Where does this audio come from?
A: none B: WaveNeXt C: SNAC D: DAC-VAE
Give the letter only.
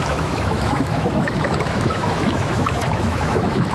D